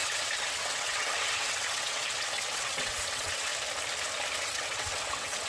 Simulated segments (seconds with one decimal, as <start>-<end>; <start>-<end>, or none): 0.0-3.5; 4.4-5.5